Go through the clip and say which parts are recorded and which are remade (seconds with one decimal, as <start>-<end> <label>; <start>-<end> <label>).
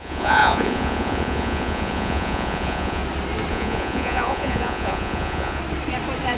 0.0-3.0 remade; 3.0-3.5 recorded; 3.5-5.6 remade; 5.6-6.4 recorded